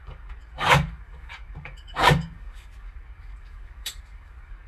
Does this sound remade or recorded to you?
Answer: remade